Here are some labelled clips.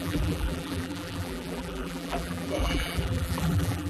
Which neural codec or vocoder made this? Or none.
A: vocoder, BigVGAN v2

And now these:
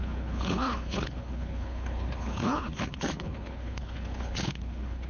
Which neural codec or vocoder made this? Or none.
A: codec, HILCodec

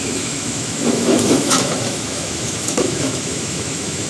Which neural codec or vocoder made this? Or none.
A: autoencoder, DAC-VAE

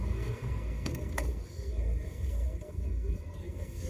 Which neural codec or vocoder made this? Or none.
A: codec, SNAC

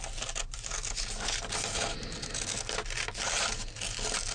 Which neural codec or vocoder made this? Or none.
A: none